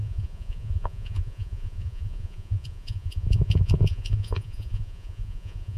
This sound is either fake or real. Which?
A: fake